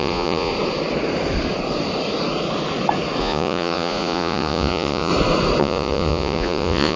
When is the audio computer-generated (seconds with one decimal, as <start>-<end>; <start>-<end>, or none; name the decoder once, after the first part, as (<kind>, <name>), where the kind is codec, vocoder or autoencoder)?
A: 0.0-0.5 (vocoder, Vocos); 3.2-5.1; 5.6-7.0